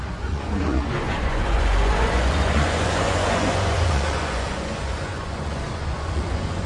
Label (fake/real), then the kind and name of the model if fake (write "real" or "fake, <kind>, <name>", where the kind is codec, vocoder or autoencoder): fake, vocoder, Vocos